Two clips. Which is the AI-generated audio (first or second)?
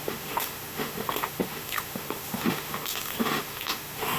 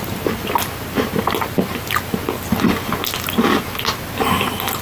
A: first